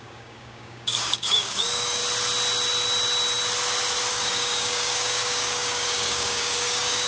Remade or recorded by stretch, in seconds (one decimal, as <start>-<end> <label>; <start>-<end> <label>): 0.0-2.0 remade; 2.0-4.1 recorded; 4.1-7.1 remade

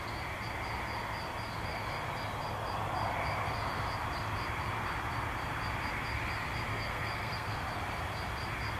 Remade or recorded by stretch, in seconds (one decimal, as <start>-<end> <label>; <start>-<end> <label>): 0.0-6.7 recorded; 6.7-7.6 remade; 7.6-8.8 recorded

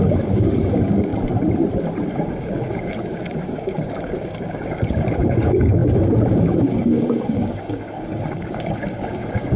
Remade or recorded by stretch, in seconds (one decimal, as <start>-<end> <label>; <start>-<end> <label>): 0.0-1.1 remade; 1.1-2.1 recorded; 2.1-9.6 remade

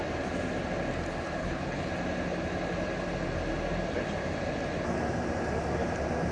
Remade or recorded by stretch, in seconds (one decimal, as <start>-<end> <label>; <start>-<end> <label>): 0.0-1.4 recorded; 1.4-1.9 remade; 1.9-6.3 recorded

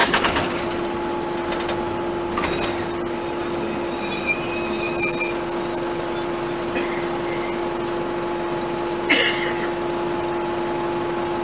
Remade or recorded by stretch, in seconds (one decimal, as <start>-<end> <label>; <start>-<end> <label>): 0.0-0.6 remade; 0.6-11.4 recorded

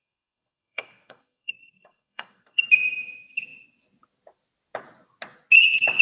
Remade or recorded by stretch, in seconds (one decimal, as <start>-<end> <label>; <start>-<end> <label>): 0.0-2.6 remade; 2.6-6.0 recorded

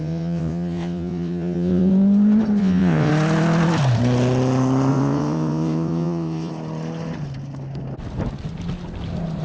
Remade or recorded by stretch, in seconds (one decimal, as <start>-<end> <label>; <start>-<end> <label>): 0.0-1.9 remade; 1.9-2.6 recorded; 2.6-3.1 remade; 3.1-4.9 recorded; 4.9-6.5 remade; 6.5-9.4 recorded

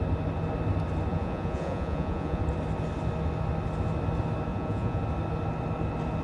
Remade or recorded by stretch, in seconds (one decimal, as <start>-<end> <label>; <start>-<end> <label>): 0.0-1.1 recorded; 1.1-2.4 remade; 2.4-4.5 recorded; 4.5-5.0 remade; 5.0-6.2 recorded